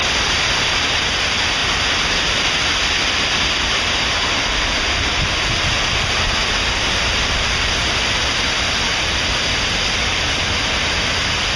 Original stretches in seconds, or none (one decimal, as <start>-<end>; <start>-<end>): 0.0-11.6